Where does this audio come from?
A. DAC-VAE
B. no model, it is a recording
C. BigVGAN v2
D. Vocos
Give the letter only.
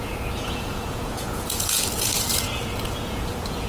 D